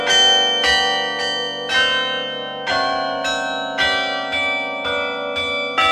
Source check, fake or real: real